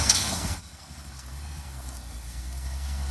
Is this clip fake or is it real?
fake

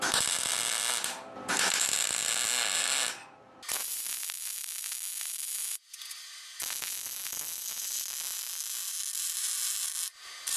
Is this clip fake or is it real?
real